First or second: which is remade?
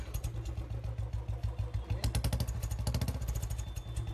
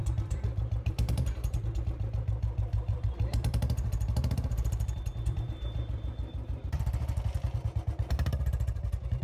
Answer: second